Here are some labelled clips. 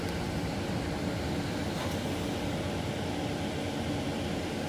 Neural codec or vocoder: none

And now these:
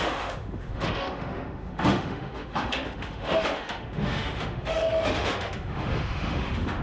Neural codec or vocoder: autoencoder, DAC-VAE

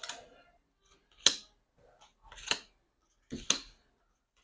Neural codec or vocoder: none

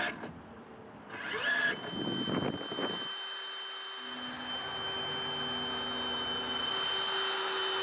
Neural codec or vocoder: none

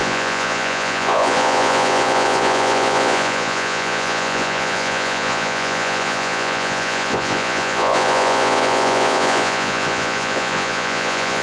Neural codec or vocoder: vocoder, Vocos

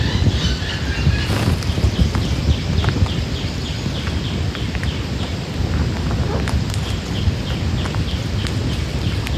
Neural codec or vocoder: none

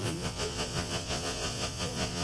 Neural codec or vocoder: vocoder, Vocos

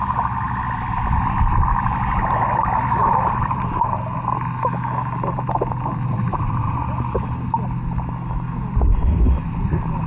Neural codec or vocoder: none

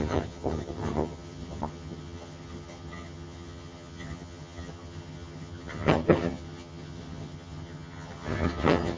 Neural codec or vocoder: vocoder, HiFi-GAN